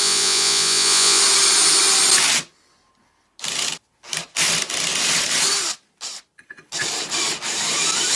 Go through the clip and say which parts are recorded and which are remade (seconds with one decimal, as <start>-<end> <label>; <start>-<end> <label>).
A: 0.0-1.2 remade; 1.2-8.2 recorded

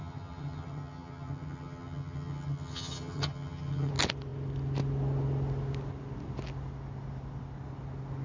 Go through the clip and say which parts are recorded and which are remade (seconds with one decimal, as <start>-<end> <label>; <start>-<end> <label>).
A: 0.0-3.9 remade; 3.9-8.2 recorded

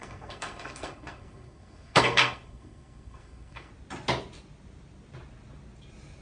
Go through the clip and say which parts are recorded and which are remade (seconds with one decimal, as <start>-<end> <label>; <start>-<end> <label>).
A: 0.0-3.7 remade; 3.7-6.2 recorded

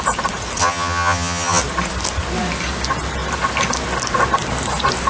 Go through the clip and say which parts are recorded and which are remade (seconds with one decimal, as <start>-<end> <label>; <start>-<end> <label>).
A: 0.0-0.6 recorded; 0.6-1.6 remade; 1.6-5.1 recorded